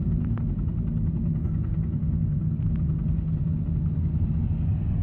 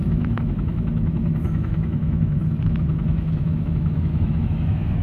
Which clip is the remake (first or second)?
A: second